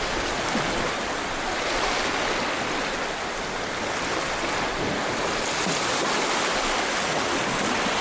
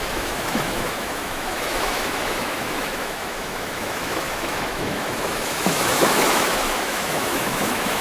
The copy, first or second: second